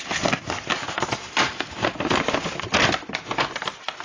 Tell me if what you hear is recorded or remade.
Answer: recorded